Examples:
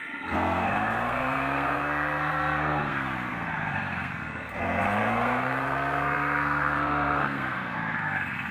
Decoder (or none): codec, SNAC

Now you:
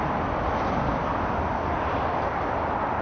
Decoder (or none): none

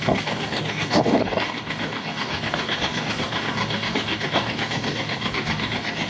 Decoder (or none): codec, DAC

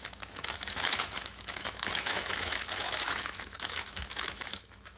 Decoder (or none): autoencoder, DAC-VAE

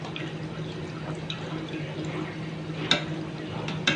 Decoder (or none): none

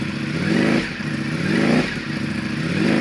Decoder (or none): none